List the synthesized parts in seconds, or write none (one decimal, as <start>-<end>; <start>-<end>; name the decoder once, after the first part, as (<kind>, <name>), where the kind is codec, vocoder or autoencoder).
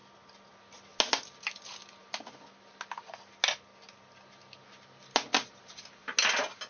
none